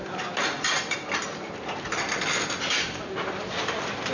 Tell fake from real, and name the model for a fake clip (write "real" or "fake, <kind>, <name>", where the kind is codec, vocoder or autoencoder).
real